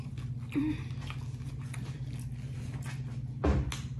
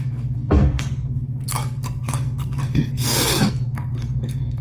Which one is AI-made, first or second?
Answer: second